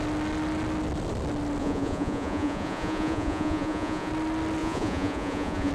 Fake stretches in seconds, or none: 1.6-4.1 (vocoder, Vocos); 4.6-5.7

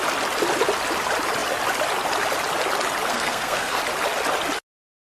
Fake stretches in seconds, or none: 3.1-3.8 (codec, SNAC)

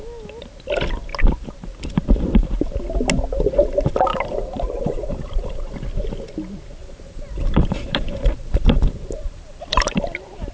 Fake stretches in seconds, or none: 4.1-5.7 (vocoder, BigVGAN v2); 6.8-9.6

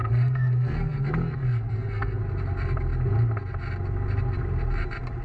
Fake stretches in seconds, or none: 0.0-2.2 (codec, SNAC)

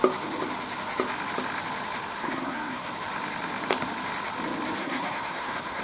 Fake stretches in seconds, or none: 2.2-2.9 (codec, SNAC); 4.8-5.8

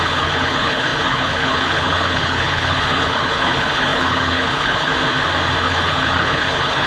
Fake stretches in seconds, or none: 0.0-4.9 (codec, HILCodec); 5.6-6.9

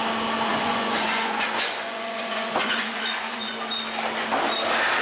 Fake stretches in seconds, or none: 0.5-3.5 (vocoder, Vocos)